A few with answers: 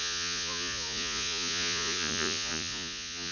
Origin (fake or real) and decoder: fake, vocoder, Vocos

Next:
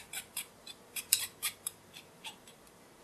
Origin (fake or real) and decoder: fake, vocoder, BigVGAN v2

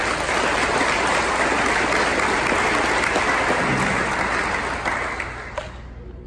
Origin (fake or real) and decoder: real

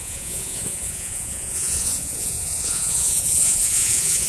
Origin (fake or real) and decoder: fake, vocoder, Vocos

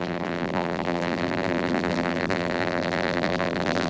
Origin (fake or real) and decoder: fake, vocoder, BigVGAN v2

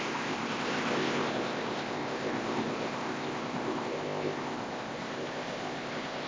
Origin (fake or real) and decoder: fake, codec, ZipCodec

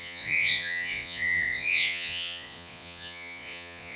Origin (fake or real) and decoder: fake, vocoder, Vocos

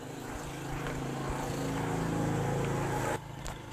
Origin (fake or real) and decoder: real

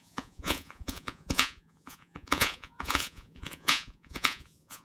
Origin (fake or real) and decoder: fake, vocoder, Vocos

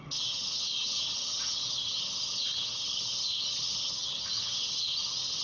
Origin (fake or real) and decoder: fake, vocoder, HiFi-GAN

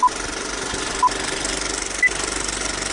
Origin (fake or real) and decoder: real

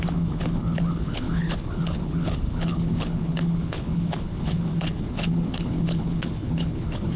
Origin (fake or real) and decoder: fake, codec, HILCodec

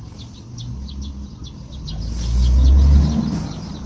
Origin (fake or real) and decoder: real